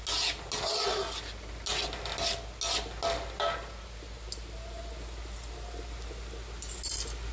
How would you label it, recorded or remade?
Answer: recorded